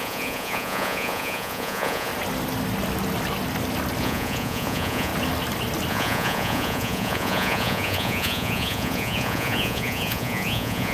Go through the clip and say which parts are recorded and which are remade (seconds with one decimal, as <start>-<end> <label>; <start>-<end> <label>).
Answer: 0.0-2.1 remade; 2.1-4.0 recorded; 4.0-5.1 remade; 5.1-5.9 recorded; 5.9-10.9 remade

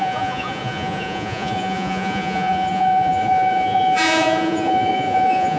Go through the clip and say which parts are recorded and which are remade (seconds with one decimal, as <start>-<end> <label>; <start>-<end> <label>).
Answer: 0.0-5.6 remade